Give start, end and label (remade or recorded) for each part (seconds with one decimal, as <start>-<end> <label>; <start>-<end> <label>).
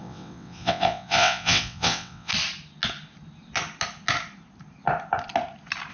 0.0-2.3 remade; 2.3-5.9 recorded